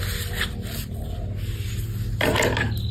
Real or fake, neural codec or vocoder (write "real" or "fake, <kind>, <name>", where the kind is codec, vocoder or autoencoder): real